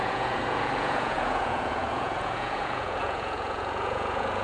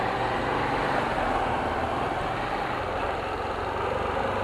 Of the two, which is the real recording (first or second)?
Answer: second